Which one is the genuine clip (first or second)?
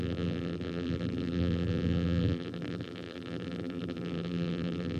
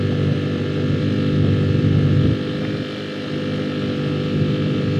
second